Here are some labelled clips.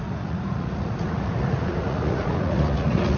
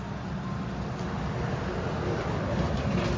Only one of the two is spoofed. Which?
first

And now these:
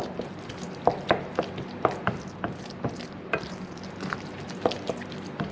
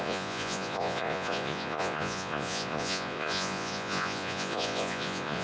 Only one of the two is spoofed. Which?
second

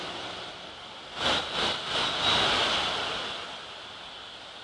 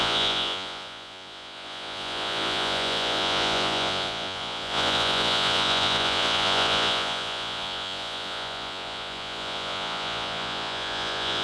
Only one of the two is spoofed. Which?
second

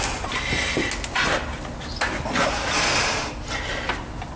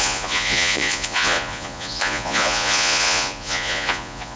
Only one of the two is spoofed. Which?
second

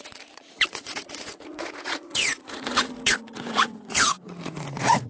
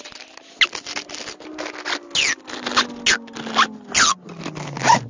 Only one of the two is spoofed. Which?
first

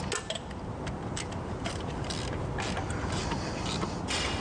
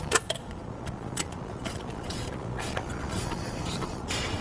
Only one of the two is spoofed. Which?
second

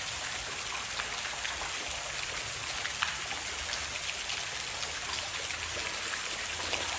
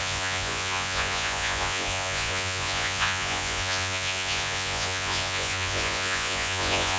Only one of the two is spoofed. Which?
second